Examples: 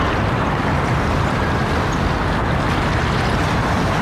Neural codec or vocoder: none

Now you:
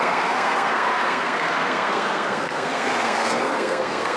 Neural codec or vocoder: codec, SNAC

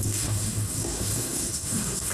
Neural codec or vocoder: codec, SNAC